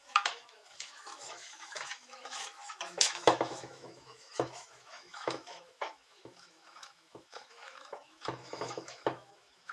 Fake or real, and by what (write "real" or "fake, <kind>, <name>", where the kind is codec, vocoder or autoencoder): fake, autoencoder, DAC-VAE